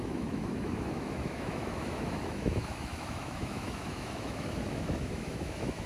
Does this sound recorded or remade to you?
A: remade